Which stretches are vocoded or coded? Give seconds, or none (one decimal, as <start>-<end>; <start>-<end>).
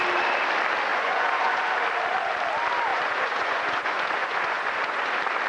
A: 0.9-1.8; 2.9-5.1